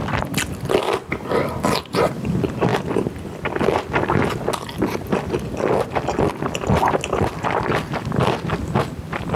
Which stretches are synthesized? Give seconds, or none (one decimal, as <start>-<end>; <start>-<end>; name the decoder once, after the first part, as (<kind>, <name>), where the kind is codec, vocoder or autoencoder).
none